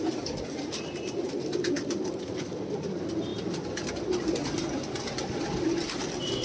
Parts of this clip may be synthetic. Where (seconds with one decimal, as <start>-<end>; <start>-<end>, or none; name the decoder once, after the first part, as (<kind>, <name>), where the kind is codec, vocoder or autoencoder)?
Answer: 0.0-6.4 (vocoder, BigVGAN v2)